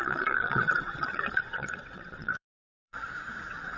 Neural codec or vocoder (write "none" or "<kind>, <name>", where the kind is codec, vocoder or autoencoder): vocoder, Vocos